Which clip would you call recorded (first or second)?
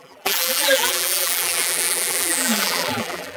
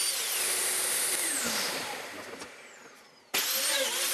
second